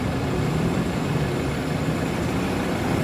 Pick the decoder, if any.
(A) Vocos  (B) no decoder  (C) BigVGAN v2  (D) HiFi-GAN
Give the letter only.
C